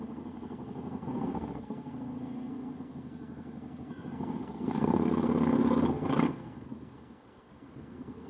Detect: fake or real fake